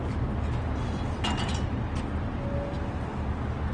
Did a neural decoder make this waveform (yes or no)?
no